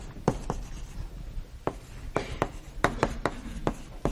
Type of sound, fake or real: real